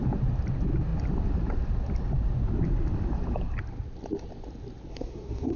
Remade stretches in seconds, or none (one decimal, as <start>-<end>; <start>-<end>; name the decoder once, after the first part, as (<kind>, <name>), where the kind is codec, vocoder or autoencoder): 4.9-5.6 (codec, SNAC)